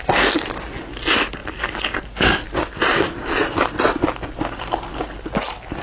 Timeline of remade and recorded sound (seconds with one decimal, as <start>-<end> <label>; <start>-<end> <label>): 0.0-5.8 recorded